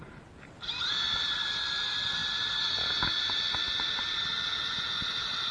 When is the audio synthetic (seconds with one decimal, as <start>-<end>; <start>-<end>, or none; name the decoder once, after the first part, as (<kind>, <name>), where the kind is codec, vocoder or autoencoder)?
none

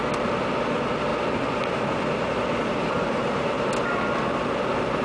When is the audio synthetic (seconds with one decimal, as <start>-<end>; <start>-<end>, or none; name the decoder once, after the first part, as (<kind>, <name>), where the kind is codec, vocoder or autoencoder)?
1.1-3.6 (vocoder, BigVGAN v2)